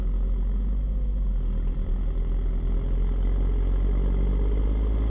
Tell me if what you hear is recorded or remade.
recorded